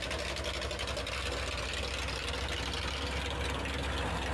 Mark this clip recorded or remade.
recorded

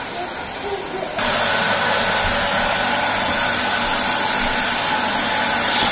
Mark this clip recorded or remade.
recorded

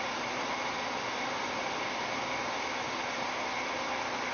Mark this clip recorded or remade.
recorded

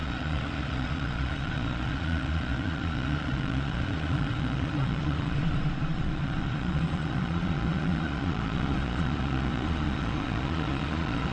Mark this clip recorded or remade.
remade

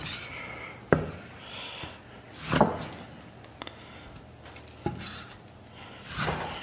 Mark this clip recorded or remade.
recorded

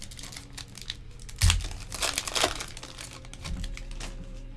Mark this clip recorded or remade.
recorded